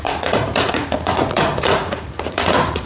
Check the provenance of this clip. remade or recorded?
remade